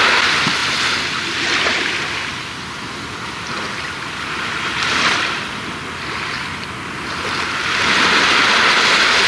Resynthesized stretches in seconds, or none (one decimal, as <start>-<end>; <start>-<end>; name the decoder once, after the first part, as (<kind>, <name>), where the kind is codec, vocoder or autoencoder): 0.6-5.8 (vocoder, BigVGAN v2)